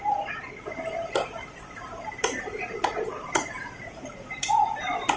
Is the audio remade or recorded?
remade